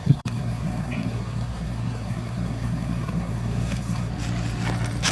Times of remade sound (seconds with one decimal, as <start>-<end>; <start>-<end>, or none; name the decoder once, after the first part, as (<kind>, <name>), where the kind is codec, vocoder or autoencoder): 0.0-4.1 (codec, SNAC)

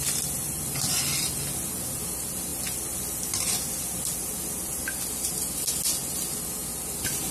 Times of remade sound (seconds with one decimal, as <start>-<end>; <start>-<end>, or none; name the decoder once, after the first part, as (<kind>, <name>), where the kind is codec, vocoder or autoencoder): none